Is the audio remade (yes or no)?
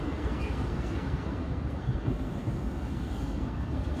yes